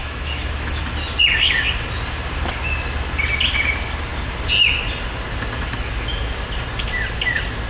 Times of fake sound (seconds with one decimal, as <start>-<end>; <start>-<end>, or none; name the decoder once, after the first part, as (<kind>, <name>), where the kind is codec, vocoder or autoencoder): 0.0-0.8 (autoencoder, DAC-VAE)